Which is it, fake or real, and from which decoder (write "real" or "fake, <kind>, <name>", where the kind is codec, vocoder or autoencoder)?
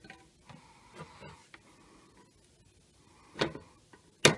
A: real